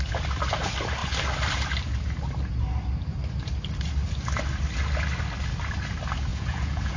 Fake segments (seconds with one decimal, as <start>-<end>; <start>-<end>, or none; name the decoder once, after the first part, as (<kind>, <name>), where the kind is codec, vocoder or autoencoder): 6.3-7.0 (vocoder, Vocos)